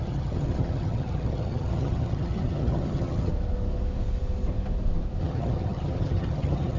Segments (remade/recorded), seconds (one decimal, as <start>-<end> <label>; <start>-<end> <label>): 0.0-3.3 remade; 3.3-5.2 recorded; 5.2-6.8 remade